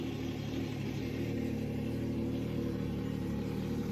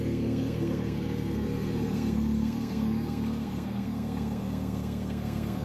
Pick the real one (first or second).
first